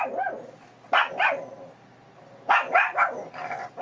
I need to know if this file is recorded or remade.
recorded